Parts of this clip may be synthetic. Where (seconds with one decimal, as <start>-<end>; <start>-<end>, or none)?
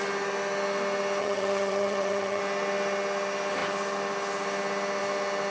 1.2-2.4